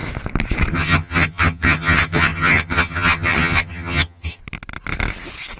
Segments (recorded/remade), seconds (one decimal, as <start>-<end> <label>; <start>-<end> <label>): 0.0-0.7 recorded; 0.7-4.4 remade; 4.4-5.6 recorded